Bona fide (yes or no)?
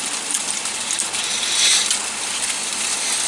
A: yes